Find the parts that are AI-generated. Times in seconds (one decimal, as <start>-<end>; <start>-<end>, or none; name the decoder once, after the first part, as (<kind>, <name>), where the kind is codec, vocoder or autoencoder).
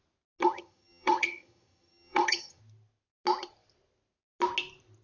0.4-2.6 (vocoder, HiFi-GAN)